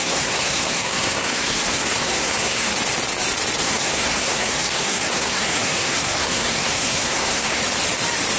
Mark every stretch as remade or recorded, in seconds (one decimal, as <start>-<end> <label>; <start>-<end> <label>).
0.0-2.7 remade; 2.7-3.6 recorded; 3.6-7.6 remade; 7.6-8.4 recorded